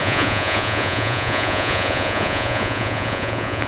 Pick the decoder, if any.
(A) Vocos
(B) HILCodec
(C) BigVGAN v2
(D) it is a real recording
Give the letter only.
A